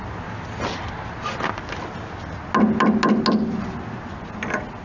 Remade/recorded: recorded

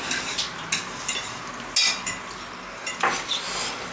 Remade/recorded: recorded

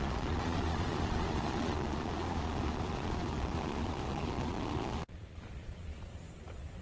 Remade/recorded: remade